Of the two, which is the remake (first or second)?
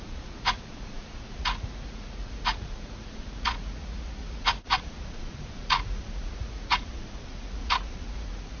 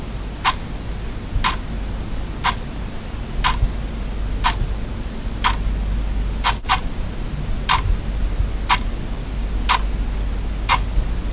first